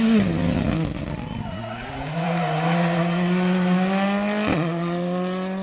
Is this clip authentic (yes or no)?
yes